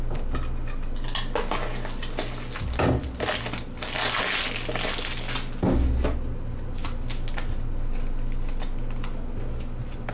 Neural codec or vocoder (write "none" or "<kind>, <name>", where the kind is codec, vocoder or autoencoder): none